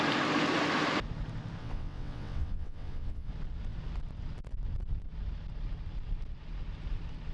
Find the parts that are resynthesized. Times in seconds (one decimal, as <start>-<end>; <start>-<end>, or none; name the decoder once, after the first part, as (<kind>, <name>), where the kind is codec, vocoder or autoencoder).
1.6-3.3 (vocoder, WaveNeXt)